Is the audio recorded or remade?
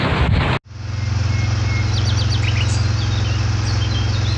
recorded